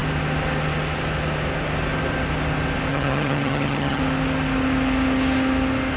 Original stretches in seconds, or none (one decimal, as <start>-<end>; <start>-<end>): 0.0-2.9; 4.0-6.0